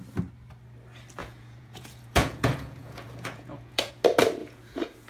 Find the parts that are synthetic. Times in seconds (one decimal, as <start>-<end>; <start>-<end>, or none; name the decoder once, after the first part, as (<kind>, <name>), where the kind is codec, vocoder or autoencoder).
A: 1.2-3.9 (vocoder, Vocos); 4.4-5.1